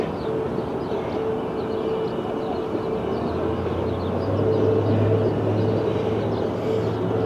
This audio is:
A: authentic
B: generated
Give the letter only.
A